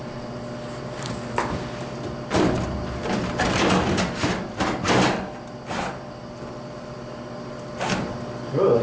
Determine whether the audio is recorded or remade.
recorded